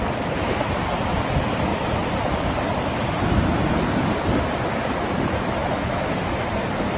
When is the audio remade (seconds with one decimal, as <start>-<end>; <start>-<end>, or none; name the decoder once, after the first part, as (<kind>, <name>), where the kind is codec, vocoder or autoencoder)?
5.6-6.4 (autoencoder, DAC-VAE)